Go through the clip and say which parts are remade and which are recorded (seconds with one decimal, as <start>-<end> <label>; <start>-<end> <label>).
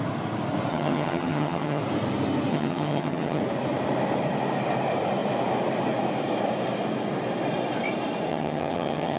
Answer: 0.0-0.7 recorded; 0.7-1.8 remade; 1.8-2.5 recorded; 2.5-3.4 remade; 3.4-8.3 recorded; 8.3-9.2 remade